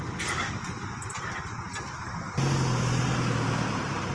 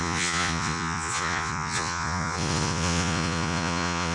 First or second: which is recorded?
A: first